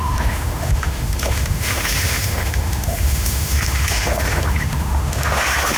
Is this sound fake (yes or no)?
yes